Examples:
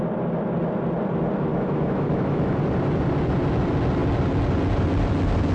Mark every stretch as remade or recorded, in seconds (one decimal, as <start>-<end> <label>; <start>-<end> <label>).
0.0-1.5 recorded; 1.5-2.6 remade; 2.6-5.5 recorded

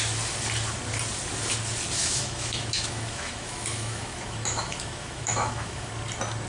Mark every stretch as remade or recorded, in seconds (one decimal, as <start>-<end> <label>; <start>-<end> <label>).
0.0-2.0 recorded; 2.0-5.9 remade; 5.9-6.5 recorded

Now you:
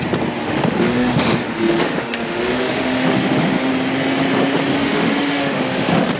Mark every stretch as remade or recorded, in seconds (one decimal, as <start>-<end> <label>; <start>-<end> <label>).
0.0-0.4 recorded; 0.4-3.7 remade; 3.7-4.8 recorded; 4.8-6.2 remade

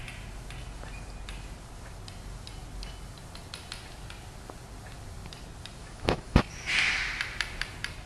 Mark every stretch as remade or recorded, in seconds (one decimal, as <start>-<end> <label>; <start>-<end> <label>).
0.0-5.8 recorded; 5.8-6.4 remade; 6.4-8.1 recorded

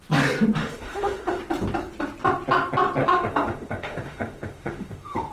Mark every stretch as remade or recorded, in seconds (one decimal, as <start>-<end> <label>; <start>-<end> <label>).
0.0-0.6 recorded; 0.6-1.4 remade; 1.4-3.0 recorded; 3.0-5.3 remade

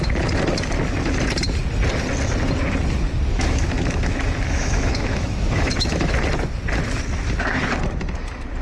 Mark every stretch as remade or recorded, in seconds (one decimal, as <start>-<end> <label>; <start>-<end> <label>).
0.0-3.3 recorded; 3.3-6.1 remade; 6.1-8.6 recorded